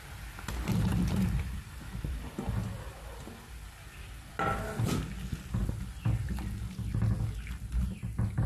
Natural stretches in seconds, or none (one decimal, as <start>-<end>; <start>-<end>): 0.0-0.9; 2.2-8.5